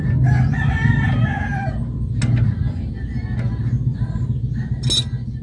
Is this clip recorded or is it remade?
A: recorded